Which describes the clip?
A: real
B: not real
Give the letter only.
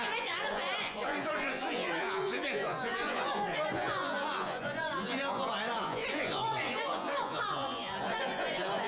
B